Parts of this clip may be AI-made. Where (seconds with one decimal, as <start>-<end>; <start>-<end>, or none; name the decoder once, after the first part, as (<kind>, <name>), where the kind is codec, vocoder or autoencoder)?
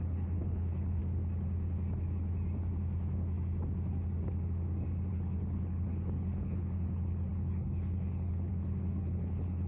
0.0-1.0 (codec, HILCodec); 5.1-9.7